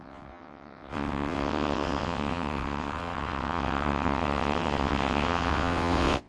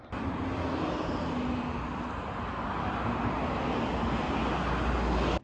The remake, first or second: first